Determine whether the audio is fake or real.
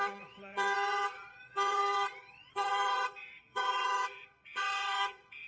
fake